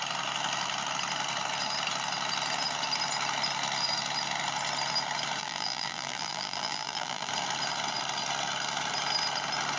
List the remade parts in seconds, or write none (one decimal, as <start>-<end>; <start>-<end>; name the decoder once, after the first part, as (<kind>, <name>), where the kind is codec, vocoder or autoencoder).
5.4-7.3 (vocoder, BigVGAN v2)